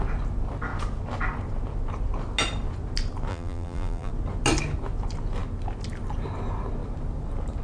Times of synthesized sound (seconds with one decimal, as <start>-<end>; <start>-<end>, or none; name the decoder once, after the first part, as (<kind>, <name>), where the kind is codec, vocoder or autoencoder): 3.3-4.1 (vocoder, BigVGAN v2)